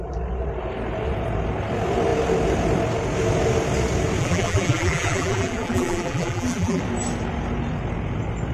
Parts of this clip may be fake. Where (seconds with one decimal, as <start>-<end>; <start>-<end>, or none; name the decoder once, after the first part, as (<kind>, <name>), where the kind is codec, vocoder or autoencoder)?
4.2-6.8 (vocoder, BigVGAN v2)